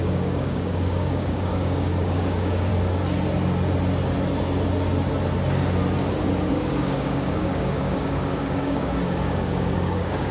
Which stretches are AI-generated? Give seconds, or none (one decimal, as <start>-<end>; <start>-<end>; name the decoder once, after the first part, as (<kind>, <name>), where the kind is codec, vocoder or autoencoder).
0.0-2.7 (codec, DAC); 6.5-10.3